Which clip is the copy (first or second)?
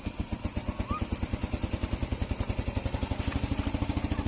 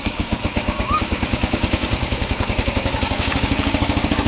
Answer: second